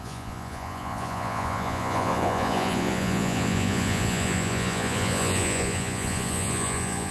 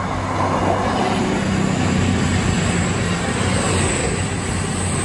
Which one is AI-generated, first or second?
first